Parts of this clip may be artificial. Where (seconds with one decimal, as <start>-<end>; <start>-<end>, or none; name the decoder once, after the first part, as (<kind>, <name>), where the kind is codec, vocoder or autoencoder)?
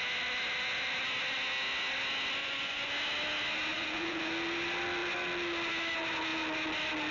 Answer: 2.4-2.9 (vocoder, Vocos); 3.7-4.3